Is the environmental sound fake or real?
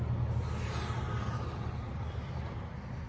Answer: real